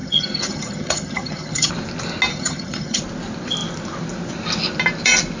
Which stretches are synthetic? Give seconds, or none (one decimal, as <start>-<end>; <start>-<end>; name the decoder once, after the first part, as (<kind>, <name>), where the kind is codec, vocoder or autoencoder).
0.0-1.7 (vocoder, HiFi-GAN); 2.3-3.0

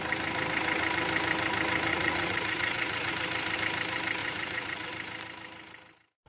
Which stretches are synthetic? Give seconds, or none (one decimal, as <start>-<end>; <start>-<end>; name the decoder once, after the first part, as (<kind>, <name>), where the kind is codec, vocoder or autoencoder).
1.9-3.1 (vocoder, Vocos); 4.2-4.9

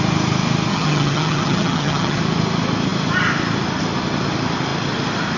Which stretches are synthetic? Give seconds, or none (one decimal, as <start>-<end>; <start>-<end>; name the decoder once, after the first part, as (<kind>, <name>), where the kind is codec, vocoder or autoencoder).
0.7-2.2 (vocoder, HiFi-GAN)

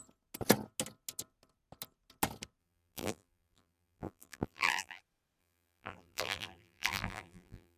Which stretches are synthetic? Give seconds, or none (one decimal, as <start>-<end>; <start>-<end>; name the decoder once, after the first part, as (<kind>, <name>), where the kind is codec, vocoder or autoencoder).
2.6-5.0 (vocoder, BigVGAN v2); 5.4-7.8

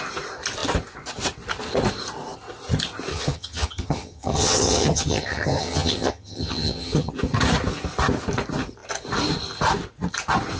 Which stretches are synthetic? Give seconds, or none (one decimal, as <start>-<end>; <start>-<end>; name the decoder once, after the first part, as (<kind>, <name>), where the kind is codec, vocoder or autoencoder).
3.1-7.1 (vocoder, HiFi-GAN)

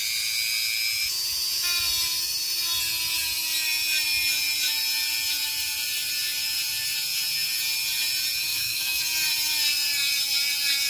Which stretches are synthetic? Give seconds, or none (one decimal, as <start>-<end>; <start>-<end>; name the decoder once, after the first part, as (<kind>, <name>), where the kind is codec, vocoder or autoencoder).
8.5-9.0 (autoencoder, DAC-VAE)

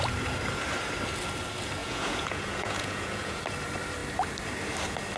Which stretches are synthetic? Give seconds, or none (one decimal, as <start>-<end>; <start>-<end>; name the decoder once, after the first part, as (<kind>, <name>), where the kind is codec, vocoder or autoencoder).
1.8-3.4 (vocoder, Vocos)